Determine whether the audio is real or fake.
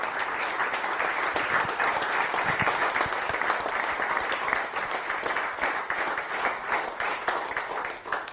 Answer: real